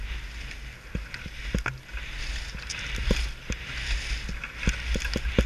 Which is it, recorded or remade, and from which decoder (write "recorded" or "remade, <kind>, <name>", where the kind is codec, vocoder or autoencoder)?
recorded